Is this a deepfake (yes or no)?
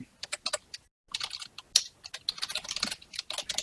no